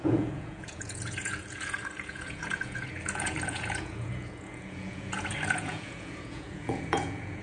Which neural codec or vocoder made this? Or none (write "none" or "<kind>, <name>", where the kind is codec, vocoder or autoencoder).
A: vocoder, Vocos